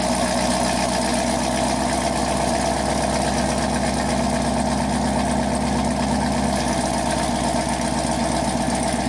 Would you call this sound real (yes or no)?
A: yes